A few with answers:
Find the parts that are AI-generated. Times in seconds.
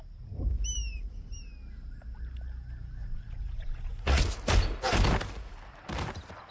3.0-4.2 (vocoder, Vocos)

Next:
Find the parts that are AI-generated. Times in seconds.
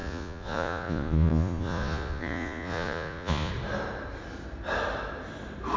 0.0-3.5 (vocoder, Vocos)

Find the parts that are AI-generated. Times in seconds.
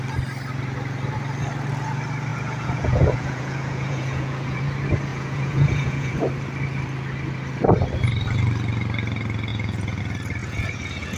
2.3-4.6 (vocoder, Vocos); 5.1-6.1; 9.5-10.0; 10.4-11.2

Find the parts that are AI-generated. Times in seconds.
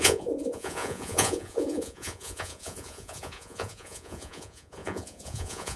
0.0-5.8 (vocoder, Vocos)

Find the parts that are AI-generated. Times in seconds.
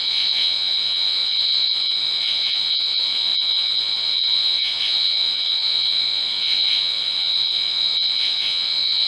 0.0-9.1 (vocoder, Vocos)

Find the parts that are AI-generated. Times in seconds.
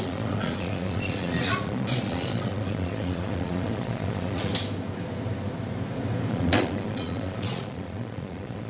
0.0-4.5 (vocoder, Vocos); 6.3-8.7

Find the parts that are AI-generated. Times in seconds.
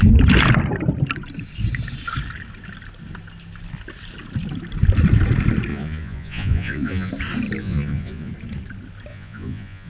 5.7-7.1 (vocoder, Vocos); 7.6-8.3; 9.1-9.9